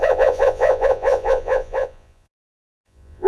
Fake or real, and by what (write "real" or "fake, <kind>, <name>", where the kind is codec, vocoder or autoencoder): fake, vocoder, Vocos